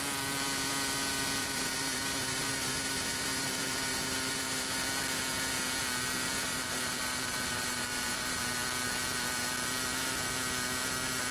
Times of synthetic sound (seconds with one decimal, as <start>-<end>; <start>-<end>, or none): 1.4-4.8; 6.4-8.4